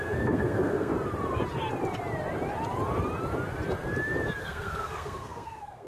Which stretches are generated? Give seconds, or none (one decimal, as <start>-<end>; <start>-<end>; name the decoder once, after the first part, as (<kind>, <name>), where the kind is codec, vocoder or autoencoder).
0.0-0.9 (codec, SNAC); 4.4-5.9